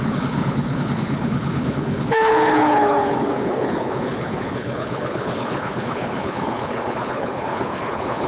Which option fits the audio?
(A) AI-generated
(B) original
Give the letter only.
A